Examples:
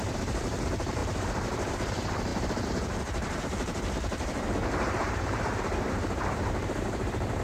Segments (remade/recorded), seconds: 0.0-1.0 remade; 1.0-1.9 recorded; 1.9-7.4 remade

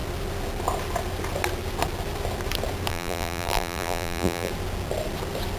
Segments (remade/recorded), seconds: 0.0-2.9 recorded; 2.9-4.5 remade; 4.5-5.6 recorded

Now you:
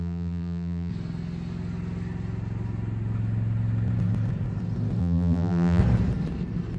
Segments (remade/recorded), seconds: 0.0-0.9 remade; 0.9-5.0 recorded; 5.0-5.8 remade; 5.8-6.8 recorded

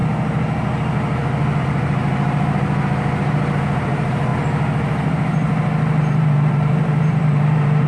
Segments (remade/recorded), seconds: 0.0-1.6 recorded; 1.6-2.0 remade; 2.0-3.2 recorded; 3.2-4.3 remade; 4.3-6.0 recorded; 6.0-7.9 remade

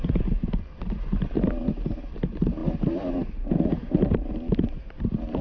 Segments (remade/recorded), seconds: 0.0-5.4 remade

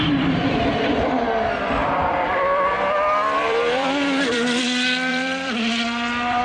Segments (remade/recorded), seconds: 0.0-1.8 recorded; 1.8-4.6 remade; 4.6-5.1 recorded; 5.1-6.4 remade

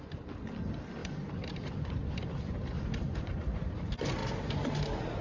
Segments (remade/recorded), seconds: 0.0-1.0 recorded; 1.0-3.8 remade; 3.8-4.2 recorded; 4.2-4.8 remade; 4.8-5.2 recorded